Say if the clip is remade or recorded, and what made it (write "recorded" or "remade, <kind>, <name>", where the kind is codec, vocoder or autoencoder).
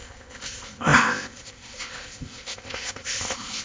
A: remade, codec, ZipCodec